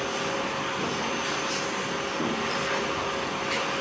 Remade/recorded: recorded